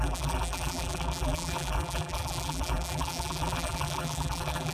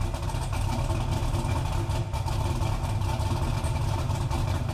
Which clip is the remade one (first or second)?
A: first